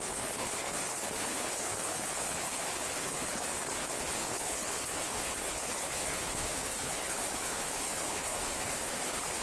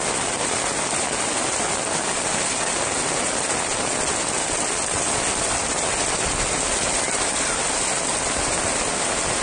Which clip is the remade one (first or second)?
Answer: first